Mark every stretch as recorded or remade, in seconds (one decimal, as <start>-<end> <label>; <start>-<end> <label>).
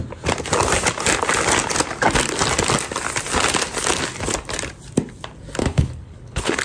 0.0-5.6 recorded; 5.6-6.6 remade